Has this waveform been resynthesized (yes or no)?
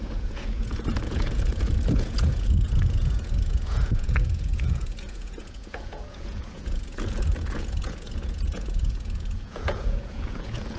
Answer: yes